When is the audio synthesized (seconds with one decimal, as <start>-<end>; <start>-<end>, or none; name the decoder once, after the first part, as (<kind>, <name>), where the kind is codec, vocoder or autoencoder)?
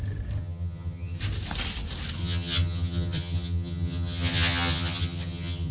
0.4-1.2 (vocoder, HiFi-GAN); 2.2-5.7